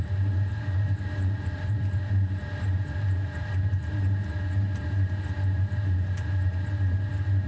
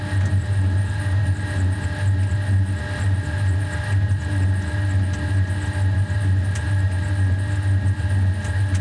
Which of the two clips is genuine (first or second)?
second